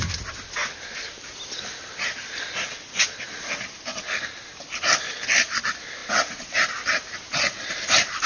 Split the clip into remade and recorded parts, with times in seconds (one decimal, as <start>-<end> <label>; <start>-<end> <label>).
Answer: 0.0-8.3 recorded